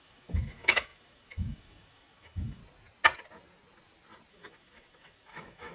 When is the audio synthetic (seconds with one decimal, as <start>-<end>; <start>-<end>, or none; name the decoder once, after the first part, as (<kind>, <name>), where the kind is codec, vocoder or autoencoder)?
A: 0.0-2.6 (autoencoder, DAC-VAE); 4.3-5.7